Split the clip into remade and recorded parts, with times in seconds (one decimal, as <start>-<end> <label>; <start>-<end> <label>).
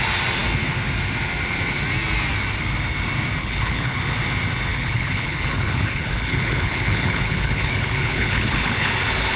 0.0-3.4 recorded; 3.4-4.0 remade; 4.0-4.7 recorded; 4.7-8.9 remade; 8.9-9.4 recorded